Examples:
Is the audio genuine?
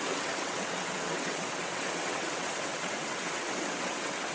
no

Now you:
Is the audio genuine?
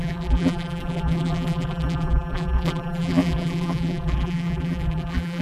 no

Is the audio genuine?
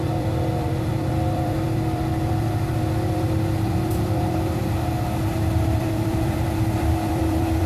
no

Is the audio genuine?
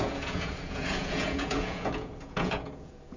no